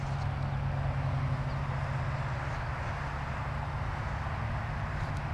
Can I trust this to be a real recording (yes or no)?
yes